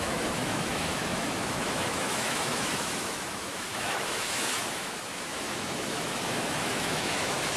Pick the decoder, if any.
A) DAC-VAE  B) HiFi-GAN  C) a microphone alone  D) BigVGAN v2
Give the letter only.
A